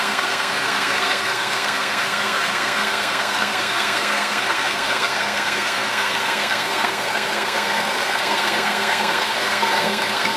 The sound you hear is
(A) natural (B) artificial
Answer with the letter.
B